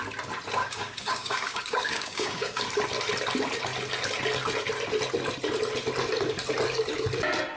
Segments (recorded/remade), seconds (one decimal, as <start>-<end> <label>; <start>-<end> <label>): 0.0-0.6 recorded; 0.6-2.6 remade; 2.6-7.6 recorded